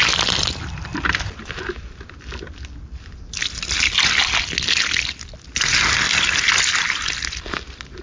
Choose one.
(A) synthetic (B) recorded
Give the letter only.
B